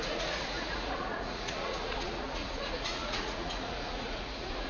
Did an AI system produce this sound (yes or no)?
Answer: yes